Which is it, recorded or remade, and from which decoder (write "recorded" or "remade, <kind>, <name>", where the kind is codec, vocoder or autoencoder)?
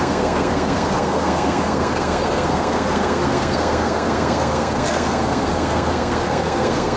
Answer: remade, codec, SNAC